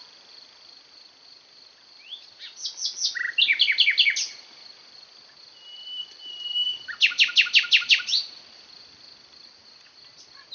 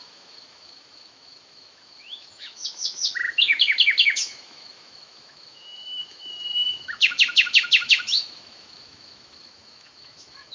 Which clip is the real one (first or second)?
first